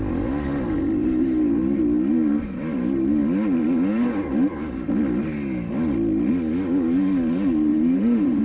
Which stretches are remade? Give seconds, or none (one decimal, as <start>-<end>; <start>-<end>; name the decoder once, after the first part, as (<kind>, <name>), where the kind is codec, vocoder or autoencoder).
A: 1.0-1.8 (vocoder, BigVGAN v2); 7.7-8.4